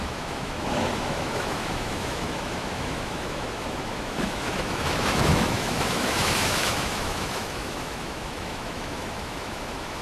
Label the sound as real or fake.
fake